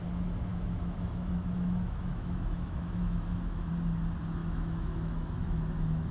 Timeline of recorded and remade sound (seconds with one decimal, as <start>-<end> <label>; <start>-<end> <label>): 0.0-0.5 recorded; 0.5-3.7 remade; 3.7-4.4 recorded; 4.4-6.1 remade